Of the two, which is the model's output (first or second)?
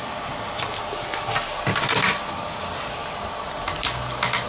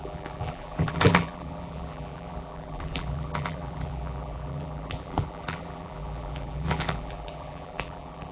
second